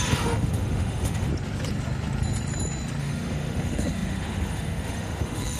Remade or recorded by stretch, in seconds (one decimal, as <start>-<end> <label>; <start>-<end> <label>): 0.0-1.3 remade; 1.3-3.0 recorded; 3.0-5.6 remade